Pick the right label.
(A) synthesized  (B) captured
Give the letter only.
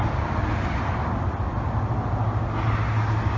B